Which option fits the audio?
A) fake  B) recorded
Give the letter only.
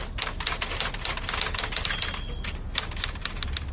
B